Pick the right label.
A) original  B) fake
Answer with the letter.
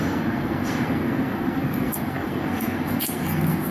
B